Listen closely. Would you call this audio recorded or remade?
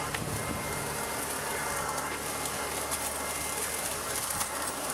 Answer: recorded